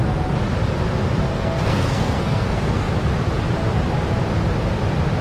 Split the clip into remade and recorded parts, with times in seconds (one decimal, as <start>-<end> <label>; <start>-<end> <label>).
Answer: 0.0-1.3 recorded; 1.3-2.9 remade; 2.9-5.2 recorded